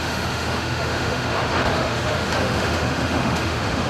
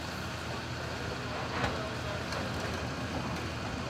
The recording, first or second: second